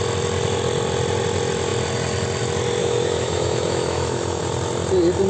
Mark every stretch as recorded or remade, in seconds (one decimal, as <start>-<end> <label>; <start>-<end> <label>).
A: 0.0-2.8 recorded; 2.8-4.4 remade; 4.4-5.3 recorded